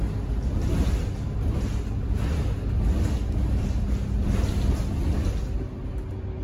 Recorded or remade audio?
recorded